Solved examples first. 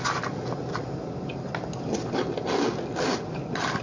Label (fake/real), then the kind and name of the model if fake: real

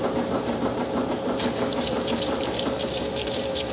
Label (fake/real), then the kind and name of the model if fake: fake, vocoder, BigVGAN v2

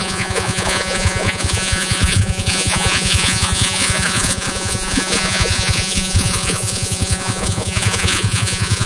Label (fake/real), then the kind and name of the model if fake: fake, vocoder, Vocos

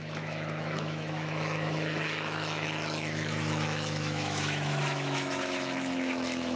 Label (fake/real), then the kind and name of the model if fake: fake, autoencoder, DAC-VAE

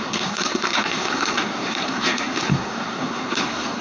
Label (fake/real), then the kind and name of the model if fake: fake, codec, SNAC